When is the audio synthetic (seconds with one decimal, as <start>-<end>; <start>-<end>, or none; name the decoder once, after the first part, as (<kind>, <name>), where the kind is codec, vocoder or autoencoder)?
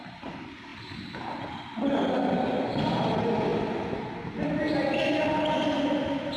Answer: none